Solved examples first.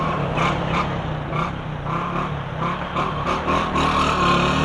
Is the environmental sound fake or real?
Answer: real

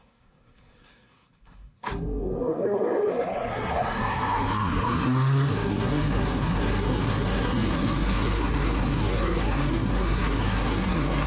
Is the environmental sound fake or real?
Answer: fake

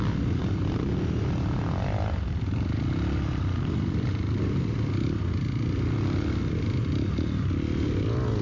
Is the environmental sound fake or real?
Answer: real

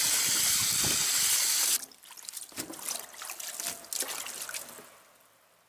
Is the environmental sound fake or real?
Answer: real